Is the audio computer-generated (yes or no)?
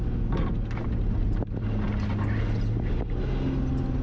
no